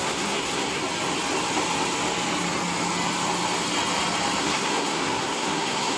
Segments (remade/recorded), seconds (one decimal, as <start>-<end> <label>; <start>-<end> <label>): 0.0-0.8 remade; 0.8-4.4 recorded; 4.4-6.0 remade